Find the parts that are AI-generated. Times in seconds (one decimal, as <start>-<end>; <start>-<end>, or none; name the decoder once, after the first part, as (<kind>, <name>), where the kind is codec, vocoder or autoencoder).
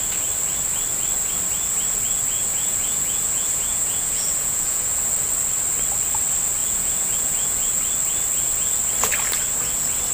2.4-5.0 (vocoder, Vocos); 6.6-7.7